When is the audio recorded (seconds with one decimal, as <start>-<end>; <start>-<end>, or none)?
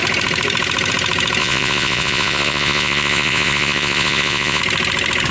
0.0-1.4; 4.6-5.3